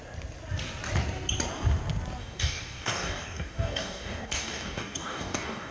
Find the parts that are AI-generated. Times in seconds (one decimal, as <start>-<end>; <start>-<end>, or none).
2.2-5.7